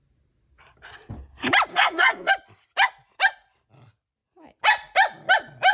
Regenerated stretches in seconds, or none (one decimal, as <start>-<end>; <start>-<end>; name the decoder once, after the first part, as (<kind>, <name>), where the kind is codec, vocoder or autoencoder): 1.7-2.3 (codec, SNAC)